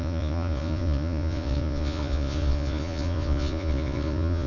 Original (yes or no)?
no